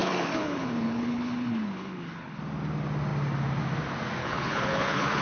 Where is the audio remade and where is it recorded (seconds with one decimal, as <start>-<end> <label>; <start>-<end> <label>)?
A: 0.0-2.4 remade; 2.4-4.2 recorded; 4.2-5.2 remade